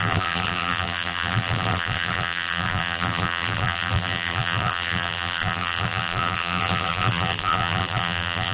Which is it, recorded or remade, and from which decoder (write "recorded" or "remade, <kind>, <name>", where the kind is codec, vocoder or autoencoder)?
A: remade, vocoder, BigVGAN v2